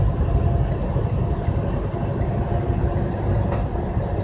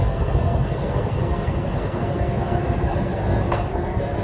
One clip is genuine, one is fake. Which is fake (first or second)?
second